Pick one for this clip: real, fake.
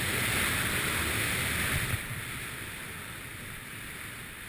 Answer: real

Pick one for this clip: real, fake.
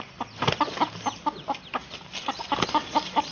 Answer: real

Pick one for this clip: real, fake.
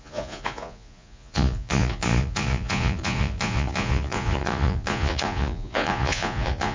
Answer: fake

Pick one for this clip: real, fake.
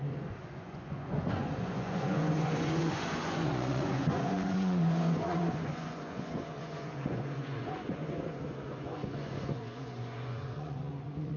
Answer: fake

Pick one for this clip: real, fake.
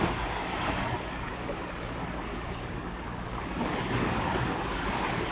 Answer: fake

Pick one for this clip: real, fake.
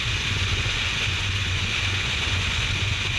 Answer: fake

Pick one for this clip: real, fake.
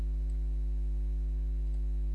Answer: real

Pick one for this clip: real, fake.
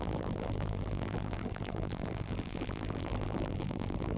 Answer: fake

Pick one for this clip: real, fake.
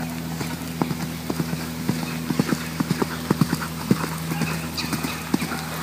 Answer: real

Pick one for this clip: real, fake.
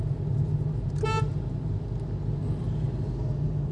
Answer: real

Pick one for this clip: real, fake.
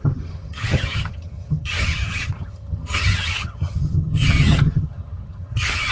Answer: fake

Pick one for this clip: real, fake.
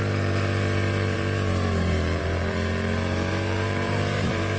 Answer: fake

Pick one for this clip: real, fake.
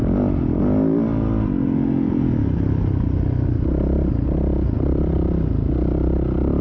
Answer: real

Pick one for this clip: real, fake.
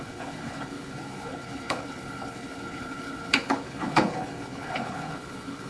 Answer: fake